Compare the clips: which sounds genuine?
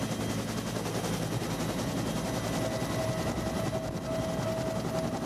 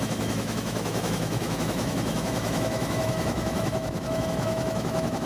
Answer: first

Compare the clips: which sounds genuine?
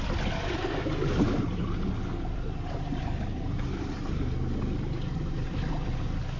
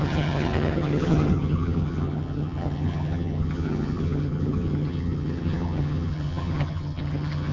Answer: first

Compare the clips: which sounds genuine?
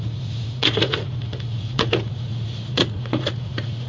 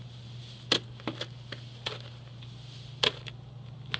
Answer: second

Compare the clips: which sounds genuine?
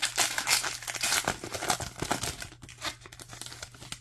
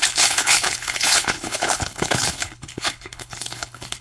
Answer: first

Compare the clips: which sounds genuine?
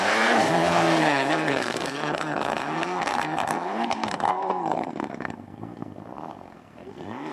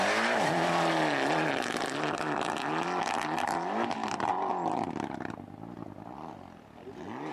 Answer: second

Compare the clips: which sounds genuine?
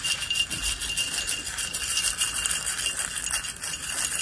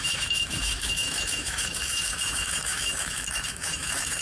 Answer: first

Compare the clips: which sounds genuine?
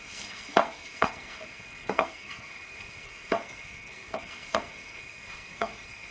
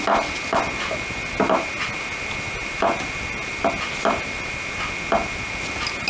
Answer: second